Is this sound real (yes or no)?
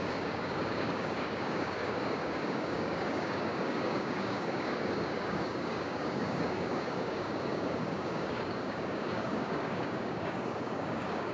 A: no